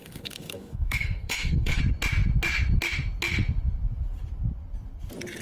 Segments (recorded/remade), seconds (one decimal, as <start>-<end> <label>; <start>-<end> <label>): 0.0-1.8 remade; 1.8-5.4 recorded